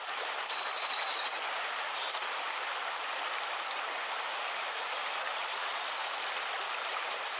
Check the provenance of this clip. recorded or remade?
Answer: recorded